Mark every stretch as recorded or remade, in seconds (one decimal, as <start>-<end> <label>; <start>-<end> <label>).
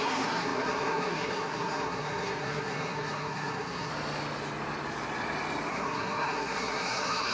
0.0-3.9 remade; 3.9-5.7 recorded; 5.7-7.3 remade